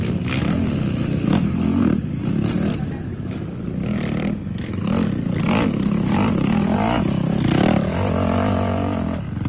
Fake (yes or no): no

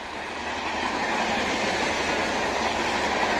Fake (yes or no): no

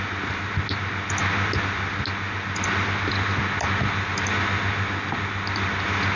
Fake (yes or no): no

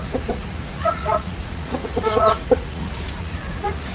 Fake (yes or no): yes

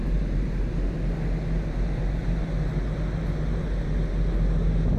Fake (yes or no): no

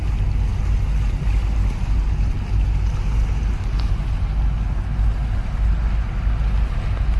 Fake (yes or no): no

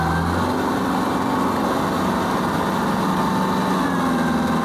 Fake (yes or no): no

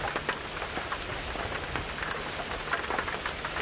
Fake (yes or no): no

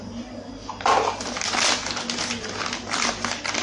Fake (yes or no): no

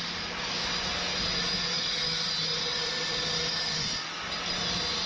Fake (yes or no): no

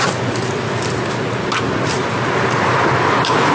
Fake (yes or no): no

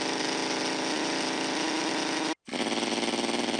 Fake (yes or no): no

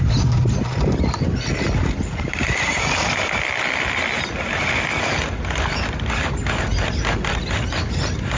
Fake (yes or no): no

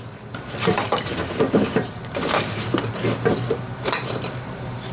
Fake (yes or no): yes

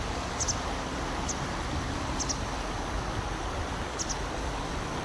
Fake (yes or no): no